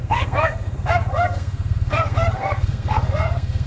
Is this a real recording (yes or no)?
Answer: no